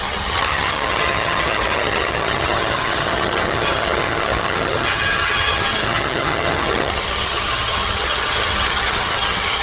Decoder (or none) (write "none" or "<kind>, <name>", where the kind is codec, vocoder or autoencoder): vocoder, HiFi-GAN